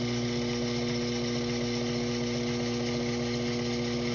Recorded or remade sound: recorded